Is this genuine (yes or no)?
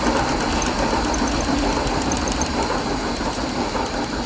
yes